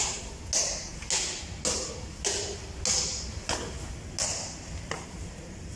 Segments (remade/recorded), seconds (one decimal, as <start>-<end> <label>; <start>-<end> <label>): 0.0-5.8 recorded